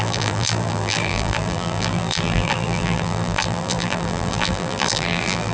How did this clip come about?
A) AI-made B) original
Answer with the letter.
A